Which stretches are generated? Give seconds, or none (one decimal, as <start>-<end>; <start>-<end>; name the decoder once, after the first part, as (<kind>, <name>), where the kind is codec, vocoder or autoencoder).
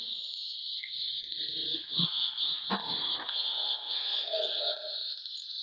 1.8-2.7 (codec, SNAC); 3.3-4.7